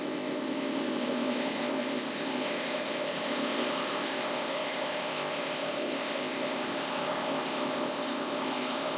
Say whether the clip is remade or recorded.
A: remade